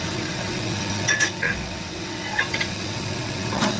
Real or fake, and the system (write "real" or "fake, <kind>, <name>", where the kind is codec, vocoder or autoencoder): fake, vocoder, WaveNeXt